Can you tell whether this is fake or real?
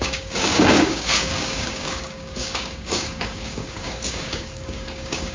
fake